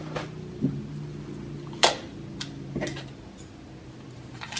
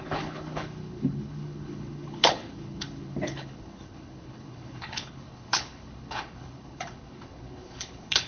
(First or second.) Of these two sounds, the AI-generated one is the second